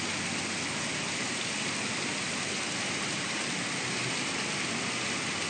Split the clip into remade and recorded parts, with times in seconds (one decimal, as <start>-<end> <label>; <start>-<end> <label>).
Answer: 0.0-0.9 recorded; 0.9-2.6 remade; 2.6-5.5 recorded